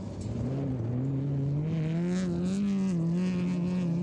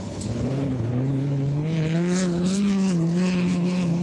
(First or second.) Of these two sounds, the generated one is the second